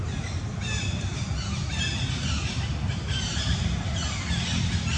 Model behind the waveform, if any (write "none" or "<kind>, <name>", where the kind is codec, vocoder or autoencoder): none